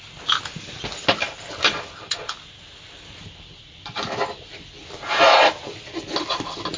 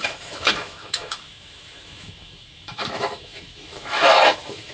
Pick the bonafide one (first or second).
first